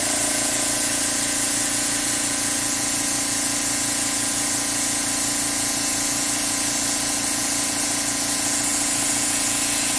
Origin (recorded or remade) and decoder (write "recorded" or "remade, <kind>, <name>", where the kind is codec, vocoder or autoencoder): remade, vocoder, Vocos